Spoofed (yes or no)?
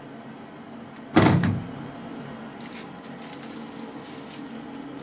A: no